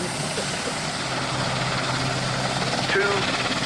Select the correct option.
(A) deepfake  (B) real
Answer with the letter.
B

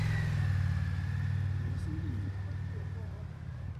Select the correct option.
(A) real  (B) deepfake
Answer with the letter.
A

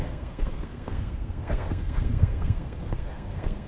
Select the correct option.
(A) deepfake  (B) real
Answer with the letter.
A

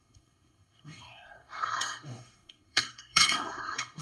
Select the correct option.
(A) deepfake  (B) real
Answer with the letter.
A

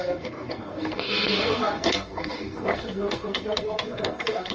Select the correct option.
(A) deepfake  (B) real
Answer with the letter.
A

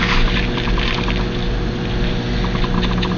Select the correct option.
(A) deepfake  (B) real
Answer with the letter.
B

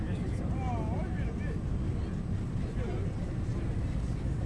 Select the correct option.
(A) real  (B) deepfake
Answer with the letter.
A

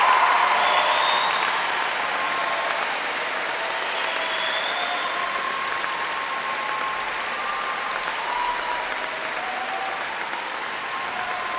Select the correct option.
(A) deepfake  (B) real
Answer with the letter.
B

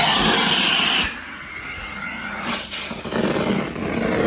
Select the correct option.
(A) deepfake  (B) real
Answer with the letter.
B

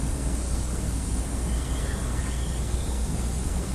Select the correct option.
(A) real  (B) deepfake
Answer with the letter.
B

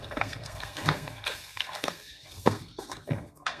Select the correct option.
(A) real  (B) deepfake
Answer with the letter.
B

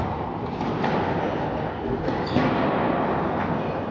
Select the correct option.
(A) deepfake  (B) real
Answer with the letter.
B